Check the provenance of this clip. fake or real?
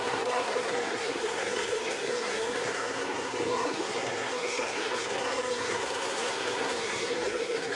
fake